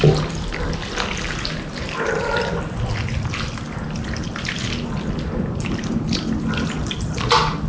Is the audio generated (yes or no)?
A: no